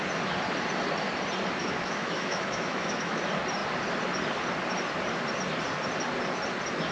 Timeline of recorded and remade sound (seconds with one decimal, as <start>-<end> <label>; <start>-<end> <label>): 0.0-1.6 recorded; 1.6-3.2 remade; 3.2-6.9 recorded